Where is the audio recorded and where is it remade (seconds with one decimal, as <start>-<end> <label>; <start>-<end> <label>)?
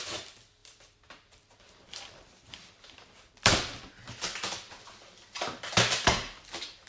0.0-0.6 recorded; 0.6-4.7 remade; 4.7-6.9 recorded